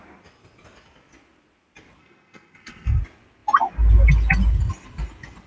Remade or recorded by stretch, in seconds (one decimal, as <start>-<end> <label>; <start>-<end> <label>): 0.0-2.0 recorded; 2.0-3.0 remade; 3.0-5.5 recorded